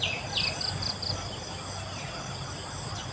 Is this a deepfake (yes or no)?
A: no